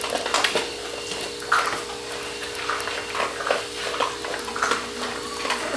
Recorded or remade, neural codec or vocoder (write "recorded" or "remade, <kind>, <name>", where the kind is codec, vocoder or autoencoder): recorded